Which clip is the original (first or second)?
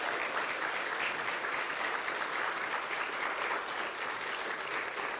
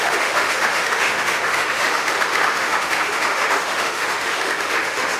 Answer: first